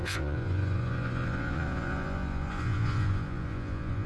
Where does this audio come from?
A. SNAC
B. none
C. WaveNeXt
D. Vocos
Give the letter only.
D